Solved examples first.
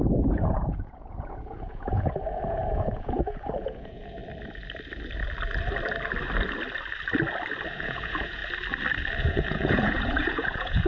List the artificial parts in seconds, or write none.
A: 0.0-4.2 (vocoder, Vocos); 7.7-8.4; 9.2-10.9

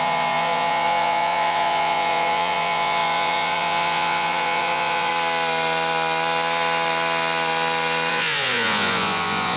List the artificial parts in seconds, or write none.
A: 0.0-5.1 (vocoder, Vocos); 8.1-9.6

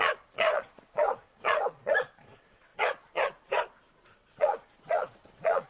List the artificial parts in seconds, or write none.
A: 0.0-5.7 (vocoder, Vocos)

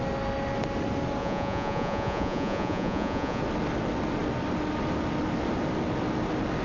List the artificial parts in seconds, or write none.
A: 1.2-3.4 (vocoder, Vocos)